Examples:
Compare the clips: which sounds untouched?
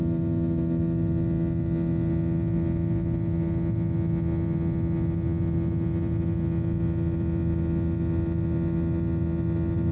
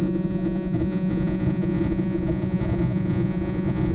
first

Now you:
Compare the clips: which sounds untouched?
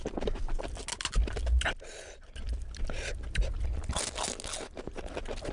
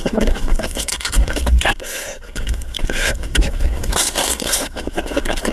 first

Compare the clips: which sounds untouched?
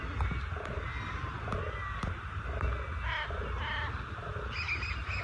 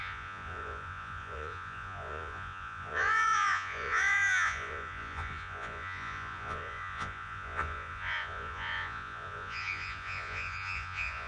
first